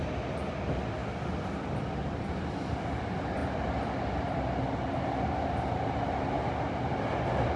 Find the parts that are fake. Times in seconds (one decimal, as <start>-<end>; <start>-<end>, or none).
none